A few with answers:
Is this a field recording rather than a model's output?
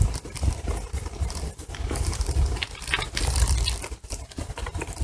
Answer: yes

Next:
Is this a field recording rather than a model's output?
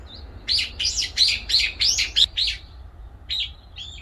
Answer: yes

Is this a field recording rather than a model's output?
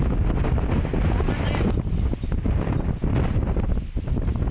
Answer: yes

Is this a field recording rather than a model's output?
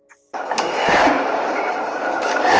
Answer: no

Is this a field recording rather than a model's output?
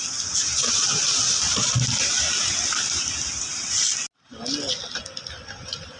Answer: yes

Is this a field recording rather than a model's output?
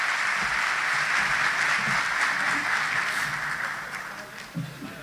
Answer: yes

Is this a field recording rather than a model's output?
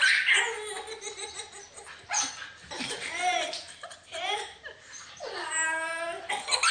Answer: yes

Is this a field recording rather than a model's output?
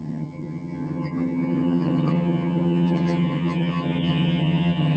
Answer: no